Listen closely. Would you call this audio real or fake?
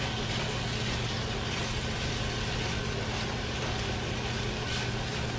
real